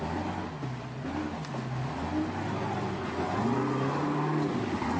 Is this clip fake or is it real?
real